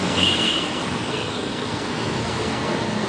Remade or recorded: remade